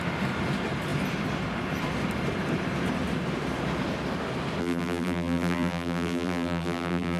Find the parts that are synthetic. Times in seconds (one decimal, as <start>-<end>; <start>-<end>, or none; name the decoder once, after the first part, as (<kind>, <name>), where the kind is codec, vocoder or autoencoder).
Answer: 4.6-7.2 (vocoder, BigVGAN v2)